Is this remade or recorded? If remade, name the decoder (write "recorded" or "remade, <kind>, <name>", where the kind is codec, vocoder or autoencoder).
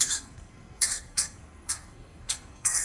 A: remade, codec, SNAC